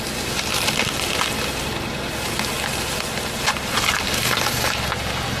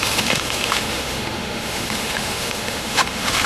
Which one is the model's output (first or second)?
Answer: second